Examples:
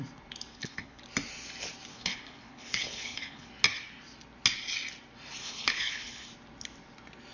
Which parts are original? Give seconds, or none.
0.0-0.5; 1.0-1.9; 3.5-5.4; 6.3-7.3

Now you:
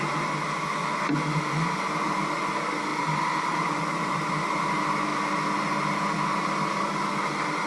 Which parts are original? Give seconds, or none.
0.0-2.9; 4.3-7.7

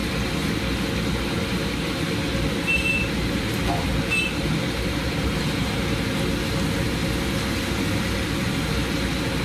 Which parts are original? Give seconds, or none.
0.0-1.1; 7.0-7.9

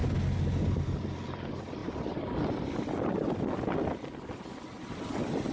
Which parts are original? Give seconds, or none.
0.0-5.5

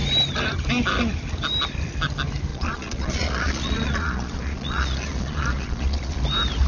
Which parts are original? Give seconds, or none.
0.0-2.5; 6.2-6.7

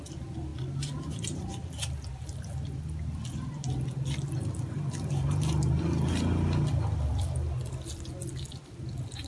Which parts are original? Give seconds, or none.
0.0-9.3